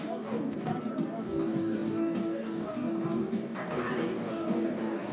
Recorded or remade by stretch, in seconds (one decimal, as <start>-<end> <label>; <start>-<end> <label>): 0.0-0.7 remade; 0.7-1.2 recorded; 1.2-5.1 remade